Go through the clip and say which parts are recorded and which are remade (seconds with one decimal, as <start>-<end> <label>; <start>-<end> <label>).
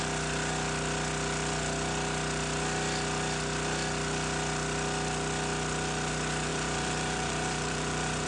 0.0-6.5 recorded; 6.5-8.3 remade